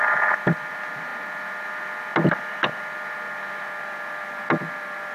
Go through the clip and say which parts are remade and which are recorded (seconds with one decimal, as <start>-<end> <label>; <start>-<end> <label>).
0.0-5.1 recorded